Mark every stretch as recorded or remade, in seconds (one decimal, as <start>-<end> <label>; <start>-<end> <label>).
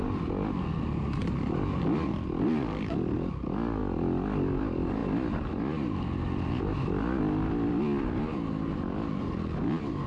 0.0-10.1 recorded